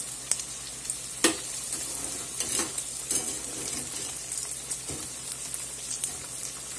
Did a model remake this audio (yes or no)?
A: no